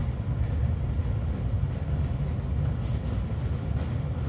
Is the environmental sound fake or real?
real